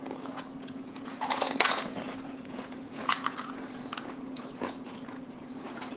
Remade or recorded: remade